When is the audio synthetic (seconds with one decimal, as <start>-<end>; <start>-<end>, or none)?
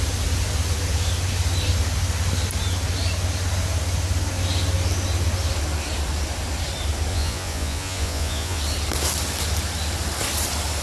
7.1-8.6